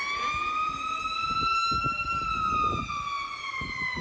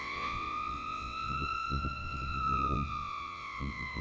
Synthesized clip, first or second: second